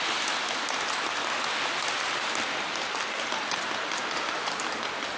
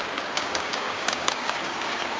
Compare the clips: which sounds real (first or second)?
first